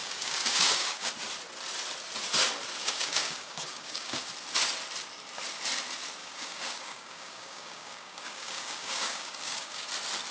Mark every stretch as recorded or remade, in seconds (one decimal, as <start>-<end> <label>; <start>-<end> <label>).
0.0-1.1 remade; 1.1-2.8 recorded; 2.8-4.3 remade; 4.3-6.2 recorded; 6.2-9.9 remade; 9.9-10.3 recorded